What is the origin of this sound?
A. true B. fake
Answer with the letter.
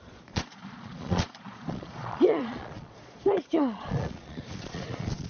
B